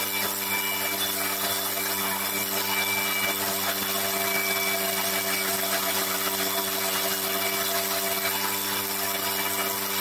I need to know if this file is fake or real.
real